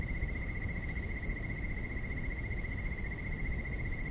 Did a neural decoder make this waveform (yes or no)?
no